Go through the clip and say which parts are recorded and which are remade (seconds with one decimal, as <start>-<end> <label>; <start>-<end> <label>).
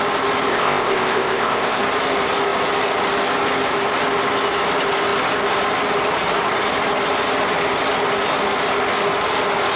0.0-0.5 recorded; 0.5-1.8 remade; 1.8-9.8 recorded